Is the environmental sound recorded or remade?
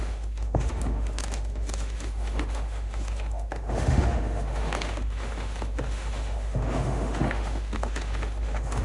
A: remade